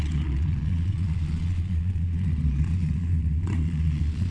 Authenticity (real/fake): fake